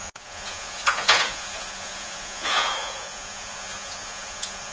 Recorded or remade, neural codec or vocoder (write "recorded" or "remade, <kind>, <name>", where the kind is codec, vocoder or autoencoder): remade, vocoder, Vocos